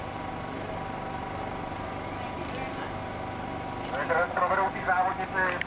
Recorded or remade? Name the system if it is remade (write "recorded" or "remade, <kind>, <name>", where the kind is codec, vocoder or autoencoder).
recorded